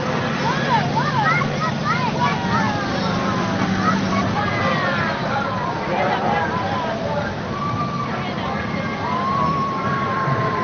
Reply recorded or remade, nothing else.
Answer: remade